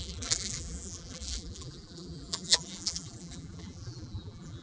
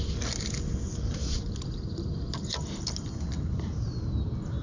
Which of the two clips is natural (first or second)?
second